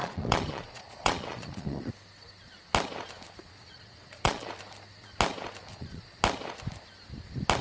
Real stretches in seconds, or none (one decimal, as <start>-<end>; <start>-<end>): 1.9-3.4; 4.5-5.7; 6.2-7.6